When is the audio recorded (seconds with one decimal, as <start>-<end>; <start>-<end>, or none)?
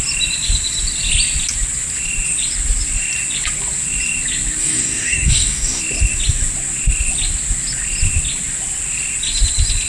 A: 0.0-4.6; 5.8-9.9